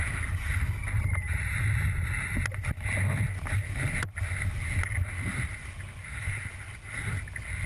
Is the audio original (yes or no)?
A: yes